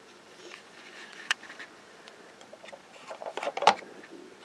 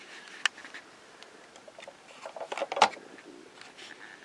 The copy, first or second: first